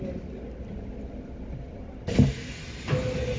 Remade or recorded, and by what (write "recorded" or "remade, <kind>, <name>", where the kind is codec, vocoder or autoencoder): recorded